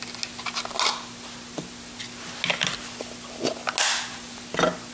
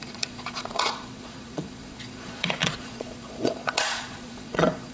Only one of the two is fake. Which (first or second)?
second